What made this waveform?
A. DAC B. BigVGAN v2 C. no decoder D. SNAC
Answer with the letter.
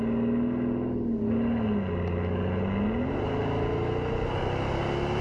C